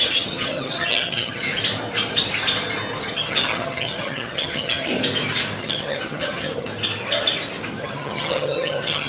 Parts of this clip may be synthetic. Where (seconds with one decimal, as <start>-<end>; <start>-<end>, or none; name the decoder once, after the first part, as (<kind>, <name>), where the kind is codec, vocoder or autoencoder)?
0.0-1.5 (vocoder, HiFi-GAN); 3.1-4.9; 5.6-6.7; 7.8-9.1